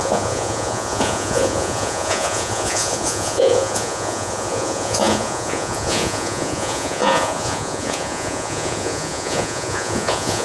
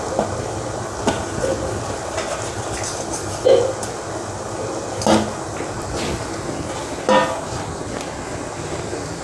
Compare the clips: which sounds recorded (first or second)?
second